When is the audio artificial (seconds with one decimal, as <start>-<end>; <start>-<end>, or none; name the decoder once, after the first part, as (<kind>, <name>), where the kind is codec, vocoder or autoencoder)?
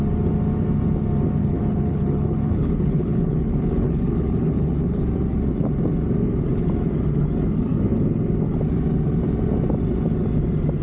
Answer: 1.4-5.0 (codec, HILCodec)